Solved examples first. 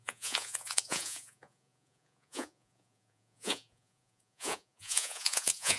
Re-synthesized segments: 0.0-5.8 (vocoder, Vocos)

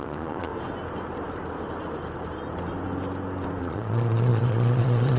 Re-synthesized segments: 0.0-0.5 (vocoder, Vocos); 3.6-5.2

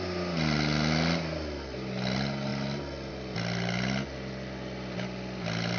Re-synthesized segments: none

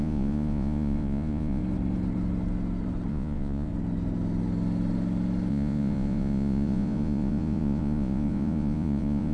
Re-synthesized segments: 0.0-1.6 (vocoder, Vocos); 3.1-3.7; 5.5-9.3

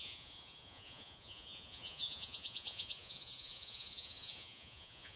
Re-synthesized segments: 0.0-5.2 (vocoder, Vocos)

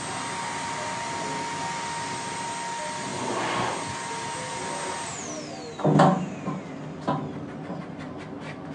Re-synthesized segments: 3.1-3.7 (vocoder, Vocos)

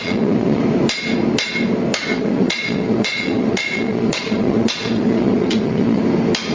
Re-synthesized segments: 0.0-0.6 (vocoder, Vocos); 2.1-6.0